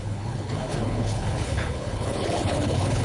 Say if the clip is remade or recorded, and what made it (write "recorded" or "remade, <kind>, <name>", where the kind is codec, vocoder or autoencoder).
remade, codec, HILCodec